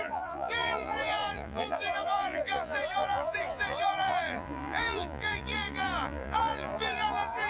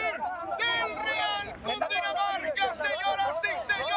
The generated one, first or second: first